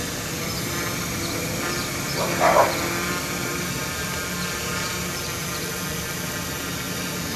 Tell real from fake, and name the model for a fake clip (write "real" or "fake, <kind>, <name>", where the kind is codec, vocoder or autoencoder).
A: fake, vocoder, BigVGAN v2